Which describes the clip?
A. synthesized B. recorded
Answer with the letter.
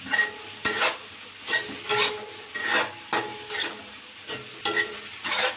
B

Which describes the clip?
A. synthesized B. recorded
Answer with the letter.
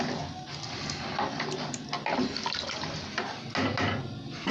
B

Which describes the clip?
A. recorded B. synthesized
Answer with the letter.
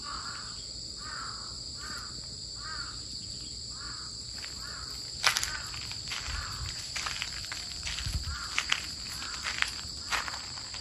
B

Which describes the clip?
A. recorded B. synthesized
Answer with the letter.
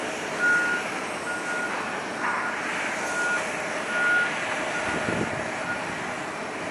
A